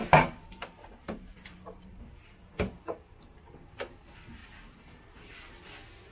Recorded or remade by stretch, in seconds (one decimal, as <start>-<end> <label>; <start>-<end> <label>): 0.0-3.7 remade; 3.7-4.4 recorded; 4.4-5.5 remade; 5.5-6.1 recorded